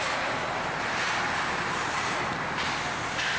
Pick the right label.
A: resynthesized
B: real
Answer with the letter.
B